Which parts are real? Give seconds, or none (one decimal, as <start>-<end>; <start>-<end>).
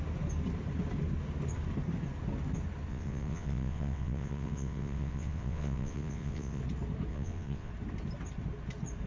0.0-2.9; 6.6-7.1; 7.7-9.1